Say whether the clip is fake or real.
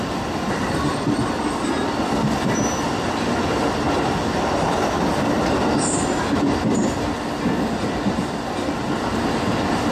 real